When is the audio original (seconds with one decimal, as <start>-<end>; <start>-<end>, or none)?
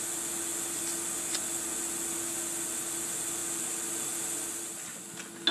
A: 0.0-5.5